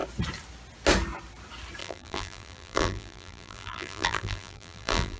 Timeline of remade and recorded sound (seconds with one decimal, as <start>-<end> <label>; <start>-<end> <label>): 0.0-1.8 recorded; 1.8-5.2 remade